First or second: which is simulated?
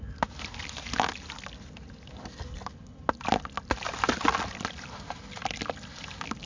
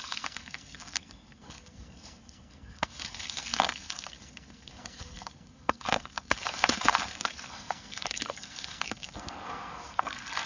second